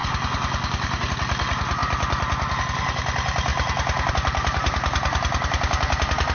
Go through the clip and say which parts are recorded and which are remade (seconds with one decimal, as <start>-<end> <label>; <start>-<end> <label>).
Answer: 0.0-6.3 recorded